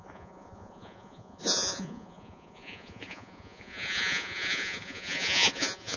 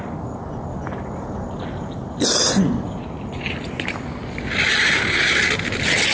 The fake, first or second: first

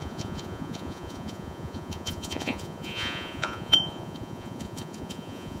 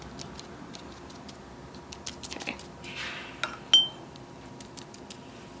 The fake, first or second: first